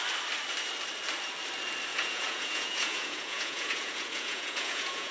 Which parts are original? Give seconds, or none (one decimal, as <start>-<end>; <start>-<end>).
0.0-1.9